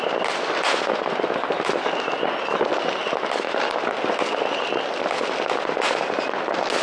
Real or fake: real